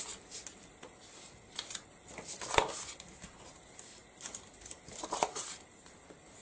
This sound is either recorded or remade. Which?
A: recorded